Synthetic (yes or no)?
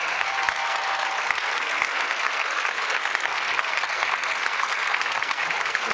yes